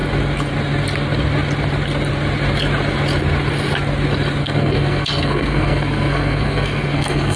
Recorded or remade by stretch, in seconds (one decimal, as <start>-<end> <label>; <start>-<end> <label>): 0.0-4.4 recorded; 4.4-7.4 remade

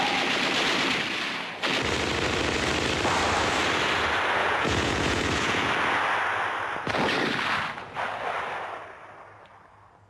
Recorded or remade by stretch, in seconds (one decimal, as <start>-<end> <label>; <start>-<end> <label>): 0.0-4.4 recorded; 4.4-5.7 remade; 5.7-10.1 recorded